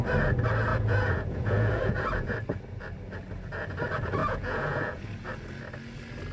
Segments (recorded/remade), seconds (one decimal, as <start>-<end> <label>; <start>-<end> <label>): 0.0-0.7 recorded; 0.7-2.3 remade; 2.3-4.2 recorded; 4.2-5.0 remade; 5.0-6.3 recorded